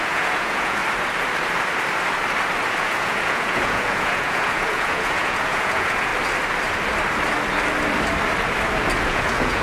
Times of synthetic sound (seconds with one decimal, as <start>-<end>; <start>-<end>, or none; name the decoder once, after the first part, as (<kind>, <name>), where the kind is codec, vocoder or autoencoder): 0.0-0.8 (vocoder, Vocos); 2.8-6.1; 9.0-9.6